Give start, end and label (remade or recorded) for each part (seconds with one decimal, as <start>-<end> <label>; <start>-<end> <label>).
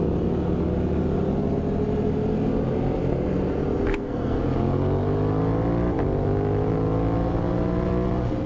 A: 0.0-3.9 recorded; 3.9-4.4 remade; 4.4-8.5 recorded